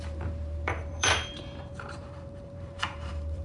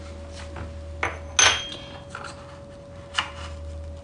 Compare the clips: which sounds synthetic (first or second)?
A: first